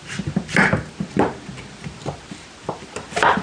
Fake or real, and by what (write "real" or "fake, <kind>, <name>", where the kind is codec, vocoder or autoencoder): real